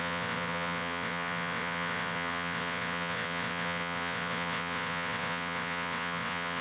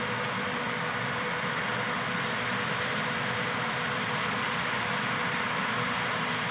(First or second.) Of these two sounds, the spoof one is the first